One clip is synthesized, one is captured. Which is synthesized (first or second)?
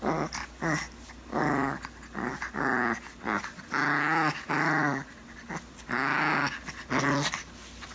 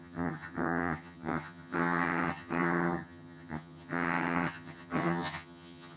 second